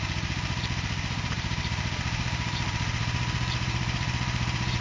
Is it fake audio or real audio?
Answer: fake